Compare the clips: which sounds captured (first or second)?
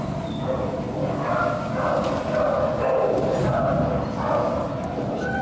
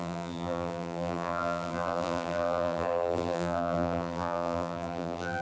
first